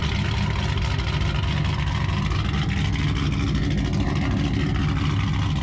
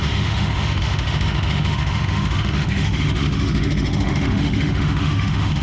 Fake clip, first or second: second